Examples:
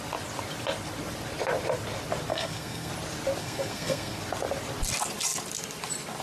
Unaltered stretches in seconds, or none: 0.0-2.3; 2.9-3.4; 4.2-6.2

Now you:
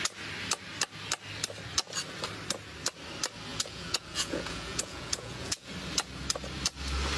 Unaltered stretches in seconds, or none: 0.0-3.5; 5.7-7.2

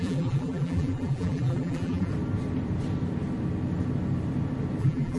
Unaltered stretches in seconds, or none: 2.1-4.8

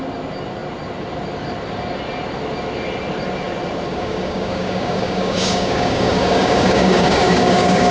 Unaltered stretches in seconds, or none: 0.0-3.9

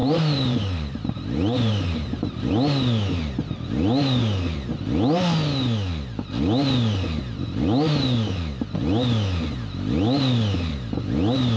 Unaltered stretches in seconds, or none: 2.5-11.6

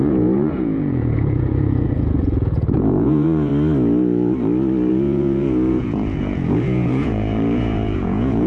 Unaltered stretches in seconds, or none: 3.5-4.9

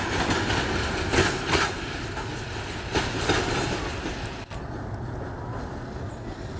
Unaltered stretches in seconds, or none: 0.0-6.6

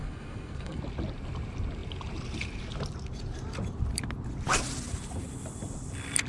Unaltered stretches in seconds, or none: 0.8-6.3